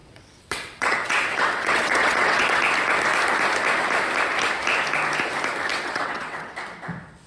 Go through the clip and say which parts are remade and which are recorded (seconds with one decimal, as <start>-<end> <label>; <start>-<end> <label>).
0.0-2.6 remade; 2.6-5.7 recorded; 5.7-6.5 remade; 6.5-7.3 recorded